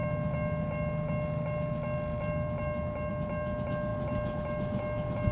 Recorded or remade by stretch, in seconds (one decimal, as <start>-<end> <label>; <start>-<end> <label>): 0.0-5.3 recorded